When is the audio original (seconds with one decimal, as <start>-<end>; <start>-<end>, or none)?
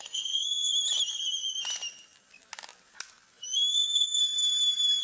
0.7-3.7; 4.2-5.0